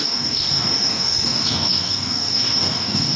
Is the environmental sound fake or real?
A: fake